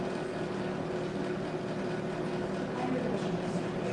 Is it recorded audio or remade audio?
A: recorded